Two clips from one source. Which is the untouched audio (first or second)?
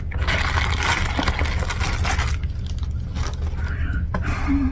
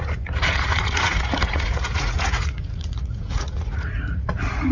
first